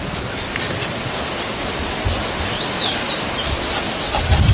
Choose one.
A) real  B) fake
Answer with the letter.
A